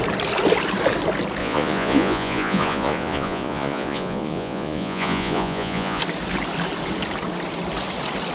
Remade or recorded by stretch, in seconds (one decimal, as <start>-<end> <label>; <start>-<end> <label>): 0.0-1.4 recorded; 1.4-6.0 remade; 6.0-8.3 recorded